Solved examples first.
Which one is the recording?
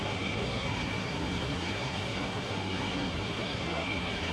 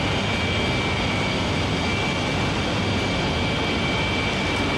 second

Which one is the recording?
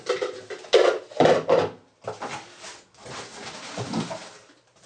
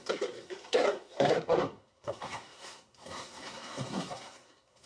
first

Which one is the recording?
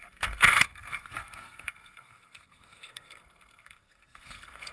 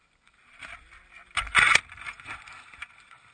second